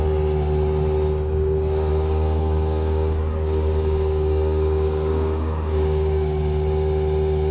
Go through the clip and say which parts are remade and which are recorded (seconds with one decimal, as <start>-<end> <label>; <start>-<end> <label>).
0.0-1.9 recorded; 1.9-6.4 remade; 6.4-7.5 recorded

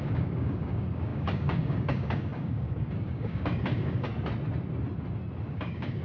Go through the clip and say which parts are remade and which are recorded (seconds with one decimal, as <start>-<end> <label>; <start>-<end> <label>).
0.0-4.1 remade; 4.1-5.5 recorded; 5.5-6.0 remade